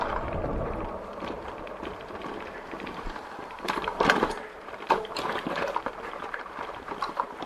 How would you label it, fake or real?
fake